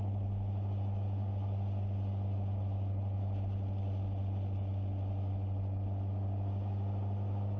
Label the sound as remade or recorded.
recorded